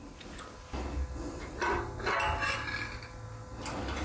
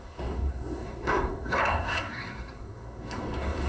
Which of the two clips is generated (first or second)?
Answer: second